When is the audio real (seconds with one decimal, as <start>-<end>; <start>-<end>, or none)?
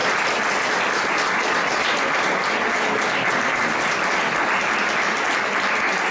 0.0-6.1